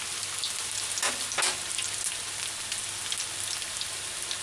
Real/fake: real